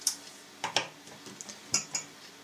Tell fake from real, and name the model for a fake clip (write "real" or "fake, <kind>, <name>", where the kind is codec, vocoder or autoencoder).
real